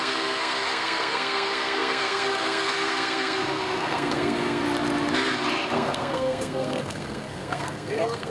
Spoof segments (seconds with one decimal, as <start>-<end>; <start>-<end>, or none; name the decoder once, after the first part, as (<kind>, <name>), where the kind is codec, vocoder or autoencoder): 0.0-4.6 (codec, SNAC); 5.7-8.3

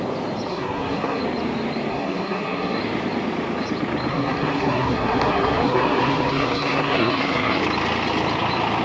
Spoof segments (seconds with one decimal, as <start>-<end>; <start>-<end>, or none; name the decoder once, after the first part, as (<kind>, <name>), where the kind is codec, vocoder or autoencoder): 0.5-1.2 (codec, SNAC); 1.9-2.8; 4.1-7.6

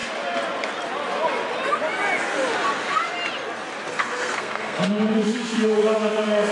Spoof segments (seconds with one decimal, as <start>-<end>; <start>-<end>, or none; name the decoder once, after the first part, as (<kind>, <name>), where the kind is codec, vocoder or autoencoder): 3.9-6.5 (codec, SNAC)

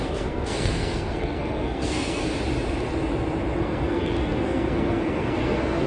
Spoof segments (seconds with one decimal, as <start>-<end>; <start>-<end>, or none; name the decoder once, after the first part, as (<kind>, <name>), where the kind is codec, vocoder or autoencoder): 0.0-2.2 (codec, SNAC); 3.6-5.9

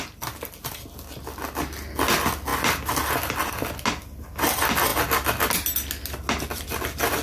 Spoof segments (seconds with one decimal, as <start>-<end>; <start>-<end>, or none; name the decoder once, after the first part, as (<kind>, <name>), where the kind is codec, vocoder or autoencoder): none